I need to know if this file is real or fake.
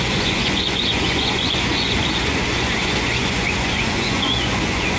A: fake